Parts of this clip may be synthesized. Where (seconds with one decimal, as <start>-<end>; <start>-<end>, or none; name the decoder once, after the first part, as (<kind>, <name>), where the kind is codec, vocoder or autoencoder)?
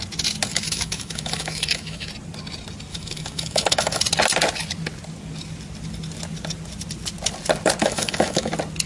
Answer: 0.5-2.1 (autoencoder, DAC-VAE); 2.9-4.0; 7.8-8.5